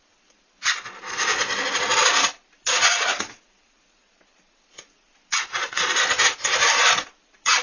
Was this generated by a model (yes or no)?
yes